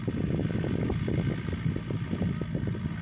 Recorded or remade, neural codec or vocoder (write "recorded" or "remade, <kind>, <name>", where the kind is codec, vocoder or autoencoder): recorded